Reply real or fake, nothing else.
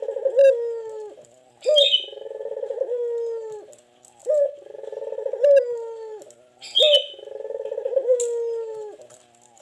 real